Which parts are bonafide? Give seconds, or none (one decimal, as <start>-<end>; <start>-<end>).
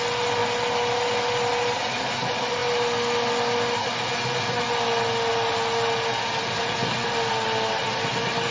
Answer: 0.0-8.5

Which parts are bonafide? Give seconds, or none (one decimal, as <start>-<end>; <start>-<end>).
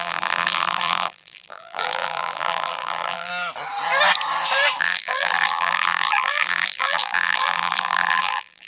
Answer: 3.3-4.8